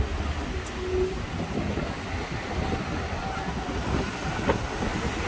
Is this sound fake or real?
real